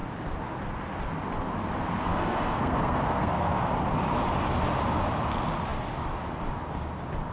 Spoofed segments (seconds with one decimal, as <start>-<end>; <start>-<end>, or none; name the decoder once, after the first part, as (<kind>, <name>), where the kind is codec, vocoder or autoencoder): 2.0-3.7 (codec, SNAC)